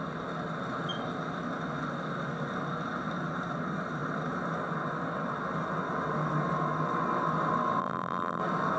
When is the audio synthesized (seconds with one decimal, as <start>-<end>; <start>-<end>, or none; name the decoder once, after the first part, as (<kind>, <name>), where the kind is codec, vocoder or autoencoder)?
7.8-8.4 (vocoder, BigVGAN v2)